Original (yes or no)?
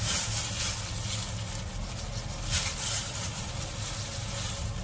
yes